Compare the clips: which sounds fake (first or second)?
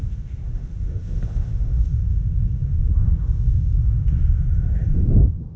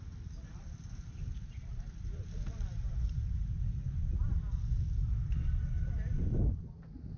first